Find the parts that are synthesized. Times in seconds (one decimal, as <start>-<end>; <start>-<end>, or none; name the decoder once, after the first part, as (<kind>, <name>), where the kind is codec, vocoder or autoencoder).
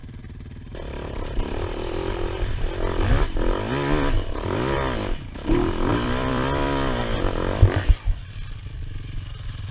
0.0-3.1 (vocoder, BigVGAN v2); 5.9-8.1